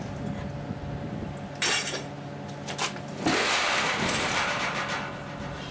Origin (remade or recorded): recorded